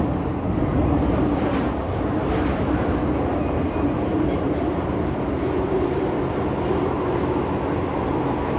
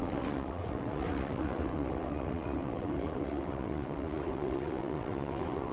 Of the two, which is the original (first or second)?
first